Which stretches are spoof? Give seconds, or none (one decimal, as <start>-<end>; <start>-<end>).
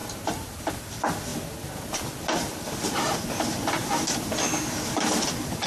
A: 0.0-0.7